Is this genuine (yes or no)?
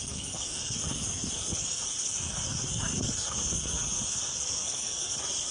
no